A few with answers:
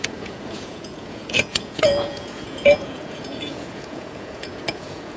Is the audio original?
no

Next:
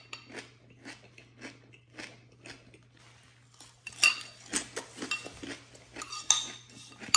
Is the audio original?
yes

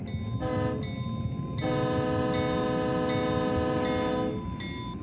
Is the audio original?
yes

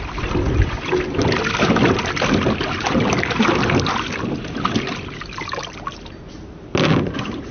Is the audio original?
yes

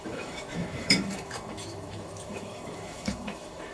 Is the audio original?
no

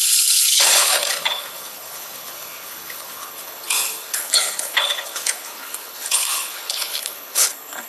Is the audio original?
no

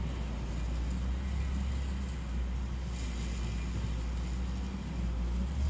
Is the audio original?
yes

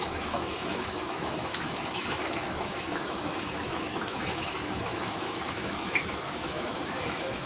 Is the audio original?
no